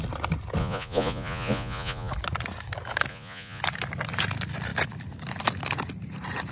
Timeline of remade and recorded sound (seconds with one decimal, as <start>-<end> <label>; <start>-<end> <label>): 0.0-0.6 recorded; 0.6-2.1 remade; 2.1-3.1 recorded; 3.1-3.6 remade; 3.6-6.5 recorded